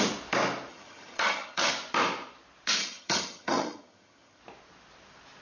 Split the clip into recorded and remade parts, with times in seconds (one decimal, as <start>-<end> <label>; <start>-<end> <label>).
0.0-0.7 recorded; 0.7-1.7 remade; 1.7-2.8 recorded; 2.8-4.4 remade; 4.4-5.4 recorded

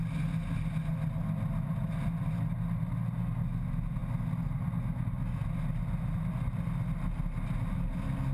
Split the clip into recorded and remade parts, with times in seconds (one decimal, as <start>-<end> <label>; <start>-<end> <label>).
0.0-8.3 recorded

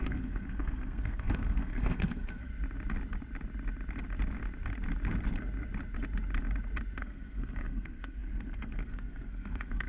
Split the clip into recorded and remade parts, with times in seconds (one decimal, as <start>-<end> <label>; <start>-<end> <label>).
0.0-2.5 remade; 2.5-7.0 recorded; 7.0-9.9 remade

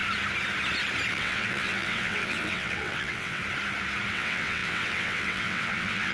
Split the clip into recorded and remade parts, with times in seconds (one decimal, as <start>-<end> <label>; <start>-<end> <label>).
0.0-1.1 recorded; 1.1-3.4 remade; 3.4-4.1 recorded; 4.1-6.1 remade